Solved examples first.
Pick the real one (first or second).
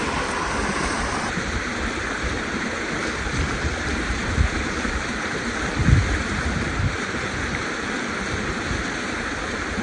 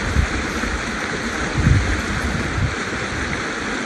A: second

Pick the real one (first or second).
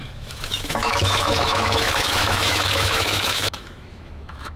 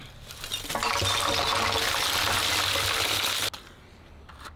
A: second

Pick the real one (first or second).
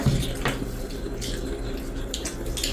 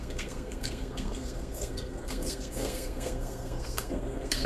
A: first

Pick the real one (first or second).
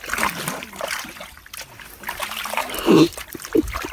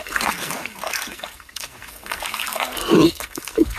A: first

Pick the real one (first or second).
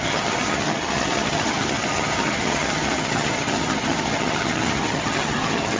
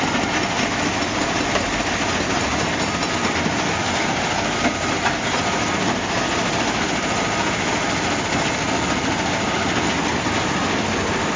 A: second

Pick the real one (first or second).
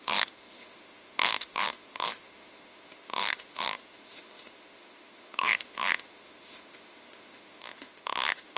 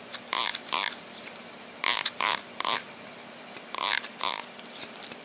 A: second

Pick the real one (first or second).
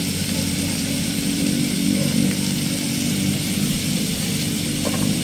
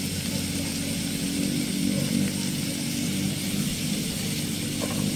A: second